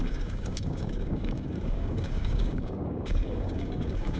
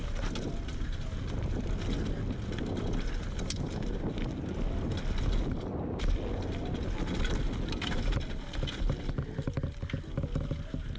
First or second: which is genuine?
second